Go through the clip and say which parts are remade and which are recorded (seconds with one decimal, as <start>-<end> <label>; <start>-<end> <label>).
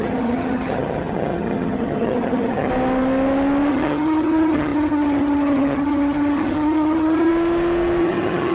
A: 0.0-2.7 remade; 2.7-3.7 recorded; 3.7-7.3 remade; 7.3-8.0 recorded; 8.0-8.5 remade